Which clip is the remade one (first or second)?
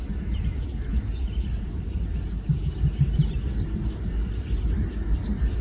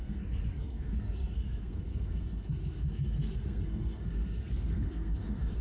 second